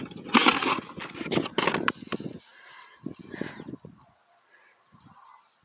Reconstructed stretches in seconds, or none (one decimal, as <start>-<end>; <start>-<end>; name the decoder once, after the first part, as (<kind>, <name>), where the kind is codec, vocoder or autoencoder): none